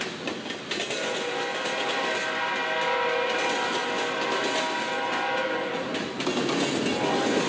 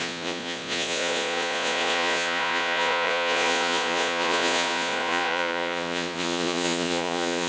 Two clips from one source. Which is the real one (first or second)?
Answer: first